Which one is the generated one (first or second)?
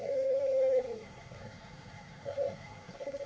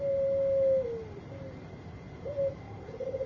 first